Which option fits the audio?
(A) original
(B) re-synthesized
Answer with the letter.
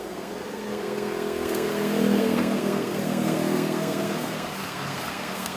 B